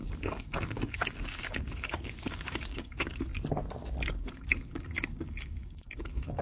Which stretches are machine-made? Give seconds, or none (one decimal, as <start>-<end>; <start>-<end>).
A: 0.0-3.3; 4.1-6.4